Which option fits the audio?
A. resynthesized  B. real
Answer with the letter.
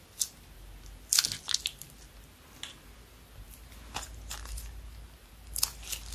B